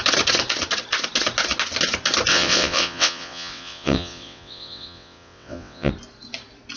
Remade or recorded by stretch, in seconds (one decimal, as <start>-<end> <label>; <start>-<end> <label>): 0.0-2.3 recorded; 2.3-5.9 remade; 5.9-6.8 recorded